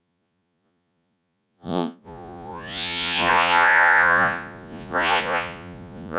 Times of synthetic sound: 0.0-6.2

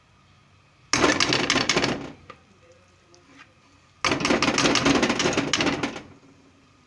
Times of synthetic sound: none

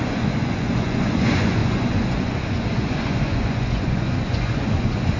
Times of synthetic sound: 0.0-5.2

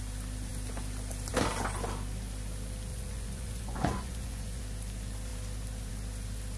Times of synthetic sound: 2.9-4.6

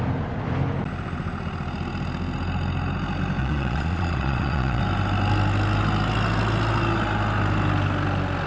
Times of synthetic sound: 3.4-4.8

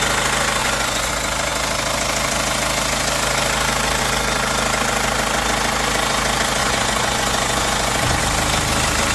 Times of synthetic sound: 0.6-1.1; 6.6-8.2

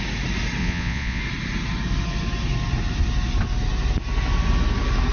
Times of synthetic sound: 0.6-1.2